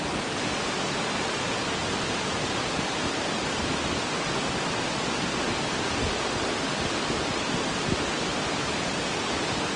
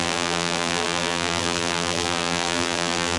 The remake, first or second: second